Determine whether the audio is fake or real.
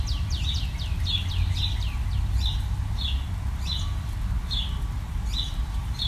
real